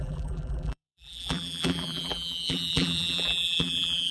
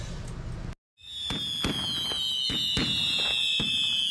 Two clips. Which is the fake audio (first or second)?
first